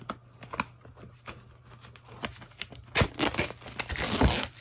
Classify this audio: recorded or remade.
recorded